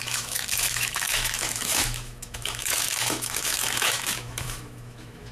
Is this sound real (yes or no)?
no